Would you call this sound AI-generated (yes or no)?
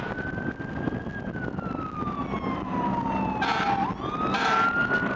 no